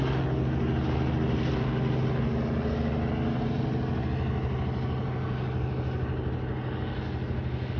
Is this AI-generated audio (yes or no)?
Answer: no